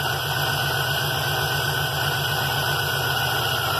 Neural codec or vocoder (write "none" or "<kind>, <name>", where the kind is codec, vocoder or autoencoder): none